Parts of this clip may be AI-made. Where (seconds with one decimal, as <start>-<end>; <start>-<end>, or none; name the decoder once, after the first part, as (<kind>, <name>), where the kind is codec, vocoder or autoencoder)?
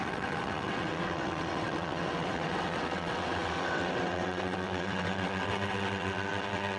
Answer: 0.0-6.8 (vocoder, WaveNeXt)